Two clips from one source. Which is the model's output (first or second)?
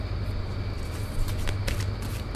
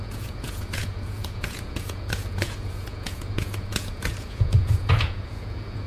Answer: second